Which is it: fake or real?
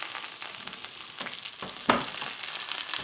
real